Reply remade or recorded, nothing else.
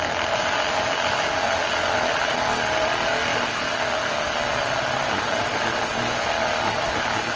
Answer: recorded